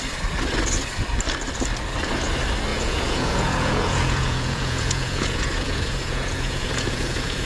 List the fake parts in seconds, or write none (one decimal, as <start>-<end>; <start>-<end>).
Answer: 2.7-7.5

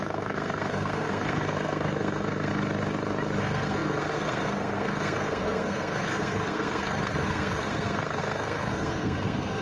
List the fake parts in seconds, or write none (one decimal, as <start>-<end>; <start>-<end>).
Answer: 0.0-2.5; 3.4-9.6